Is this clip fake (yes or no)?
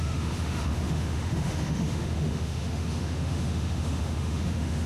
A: yes